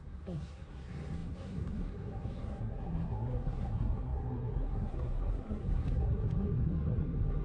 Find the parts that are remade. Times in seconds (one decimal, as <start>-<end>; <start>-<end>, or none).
0.0-7.4